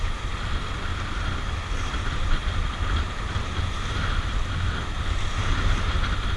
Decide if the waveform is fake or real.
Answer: real